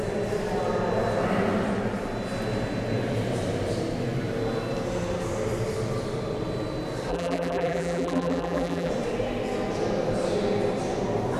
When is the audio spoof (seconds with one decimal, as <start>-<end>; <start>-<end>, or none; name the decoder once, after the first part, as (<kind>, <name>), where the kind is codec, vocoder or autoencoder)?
7.1-8.9 (vocoder, BigVGAN v2)